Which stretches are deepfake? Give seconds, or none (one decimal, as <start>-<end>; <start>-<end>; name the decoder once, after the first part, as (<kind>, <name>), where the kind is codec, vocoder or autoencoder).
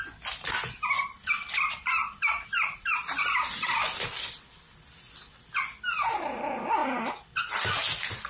none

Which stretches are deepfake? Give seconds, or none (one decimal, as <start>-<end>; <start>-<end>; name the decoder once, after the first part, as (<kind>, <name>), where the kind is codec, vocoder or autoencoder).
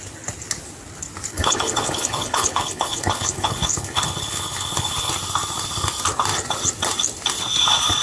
1.3-5.1 (codec, HILCodec)